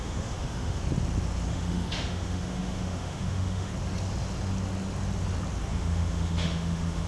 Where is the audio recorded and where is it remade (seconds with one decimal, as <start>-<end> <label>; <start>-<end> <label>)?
0.0-0.8 remade; 0.8-1.5 recorded; 1.5-3.7 remade; 3.7-5.7 recorded; 5.7-7.1 remade